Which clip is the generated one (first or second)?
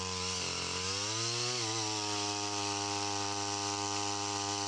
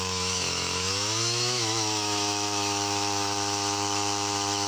second